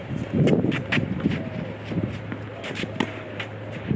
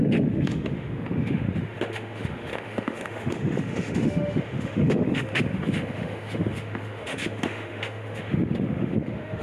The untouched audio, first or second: first